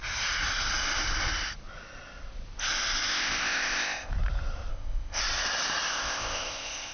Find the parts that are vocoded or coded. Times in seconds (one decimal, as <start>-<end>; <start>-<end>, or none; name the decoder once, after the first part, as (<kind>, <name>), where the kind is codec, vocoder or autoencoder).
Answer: 3.1-4.1 (codec, ZipCodec); 4.7-5.2; 5.9-6.9